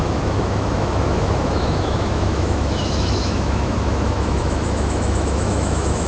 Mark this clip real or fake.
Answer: fake